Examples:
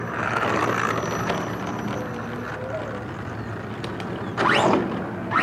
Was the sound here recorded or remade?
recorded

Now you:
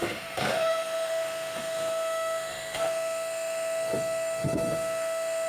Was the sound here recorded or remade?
remade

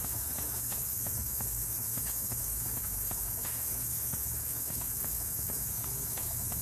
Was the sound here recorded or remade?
remade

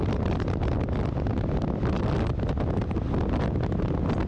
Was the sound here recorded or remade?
recorded